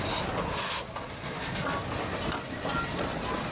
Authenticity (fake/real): real